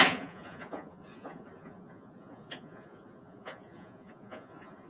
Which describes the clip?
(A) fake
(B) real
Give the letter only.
A